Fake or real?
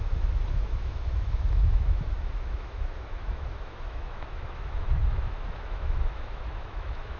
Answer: fake